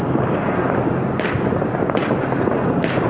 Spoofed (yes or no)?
no